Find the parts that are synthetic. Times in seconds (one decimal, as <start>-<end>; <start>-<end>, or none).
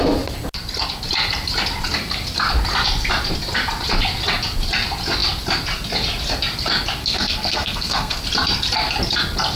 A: 7.0-8.2